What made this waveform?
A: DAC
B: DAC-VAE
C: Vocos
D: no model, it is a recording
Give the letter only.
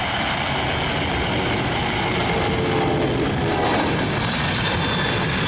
D